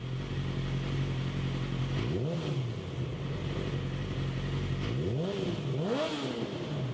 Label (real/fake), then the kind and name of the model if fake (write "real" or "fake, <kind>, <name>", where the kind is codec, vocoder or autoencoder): real